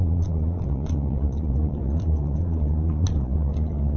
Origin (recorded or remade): remade